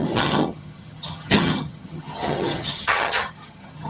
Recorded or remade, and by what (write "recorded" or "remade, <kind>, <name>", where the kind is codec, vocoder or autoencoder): remade, vocoder, HiFi-GAN